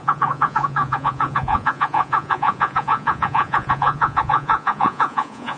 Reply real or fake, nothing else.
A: fake